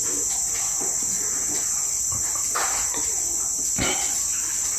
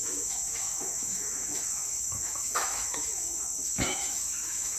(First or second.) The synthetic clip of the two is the second